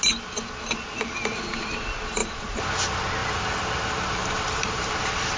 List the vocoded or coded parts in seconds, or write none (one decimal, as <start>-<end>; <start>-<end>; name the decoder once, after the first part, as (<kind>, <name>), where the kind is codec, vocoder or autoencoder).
2.2-2.7 (vocoder, BigVGAN v2); 3.2-4.9